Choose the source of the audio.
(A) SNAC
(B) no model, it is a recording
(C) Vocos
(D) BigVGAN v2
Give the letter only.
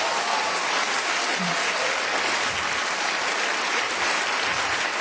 B